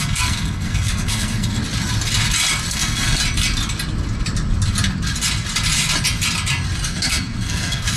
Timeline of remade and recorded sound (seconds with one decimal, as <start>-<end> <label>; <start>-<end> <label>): 0.0-1.6 remade; 1.6-2.7 recorded; 2.7-3.2 remade; 3.2-6.9 recorded; 6.9-8.0 remade